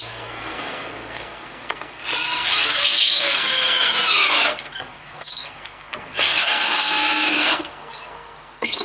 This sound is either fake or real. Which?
fake